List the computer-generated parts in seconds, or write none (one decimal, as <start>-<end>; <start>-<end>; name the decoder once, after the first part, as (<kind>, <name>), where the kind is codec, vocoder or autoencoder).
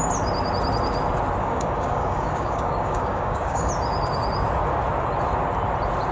1.4-3.7 (codec, DAC)